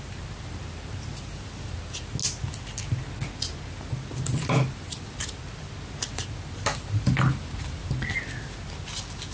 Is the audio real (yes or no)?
yes